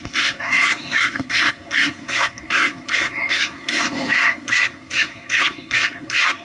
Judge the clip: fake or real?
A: fake